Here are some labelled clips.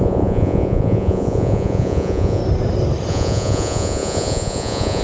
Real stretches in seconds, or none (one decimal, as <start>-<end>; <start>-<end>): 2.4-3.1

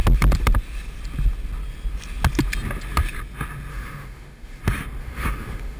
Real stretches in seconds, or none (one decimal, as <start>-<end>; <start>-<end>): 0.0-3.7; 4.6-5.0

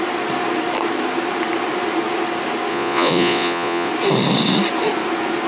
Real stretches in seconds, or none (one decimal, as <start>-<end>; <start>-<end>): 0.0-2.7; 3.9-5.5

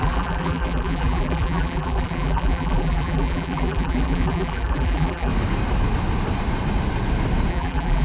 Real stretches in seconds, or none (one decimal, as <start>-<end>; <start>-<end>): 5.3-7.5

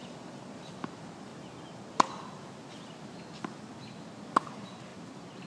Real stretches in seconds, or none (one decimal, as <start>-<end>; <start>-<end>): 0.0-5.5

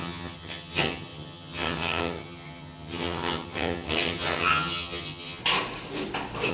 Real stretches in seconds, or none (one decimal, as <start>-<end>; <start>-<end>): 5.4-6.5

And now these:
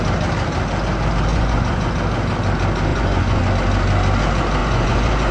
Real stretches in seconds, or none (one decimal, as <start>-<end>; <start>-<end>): 0.0-1.3; 1.9-2.9; 3.5-4.6

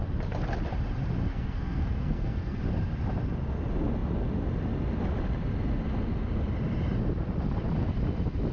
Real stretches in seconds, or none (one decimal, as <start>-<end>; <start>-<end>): 0.0-1.3; 2.6-8.5